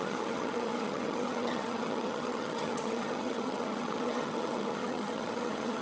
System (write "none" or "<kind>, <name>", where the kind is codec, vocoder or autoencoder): vocoder, HiFi-GAN